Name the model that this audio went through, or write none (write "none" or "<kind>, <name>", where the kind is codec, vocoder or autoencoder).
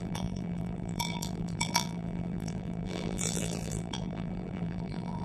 vocoder, BigVGAN v2